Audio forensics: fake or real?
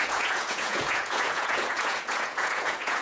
fake